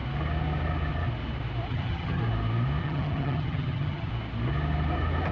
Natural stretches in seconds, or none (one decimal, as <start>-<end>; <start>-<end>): 0.0-1.7; 2.2-2.8; 4.1-5.3